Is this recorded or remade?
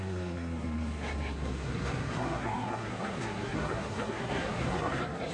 remade